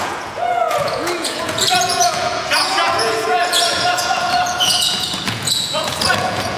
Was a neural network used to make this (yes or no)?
yes